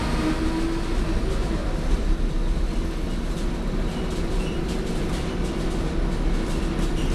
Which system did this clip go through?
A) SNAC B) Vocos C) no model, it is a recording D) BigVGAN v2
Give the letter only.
C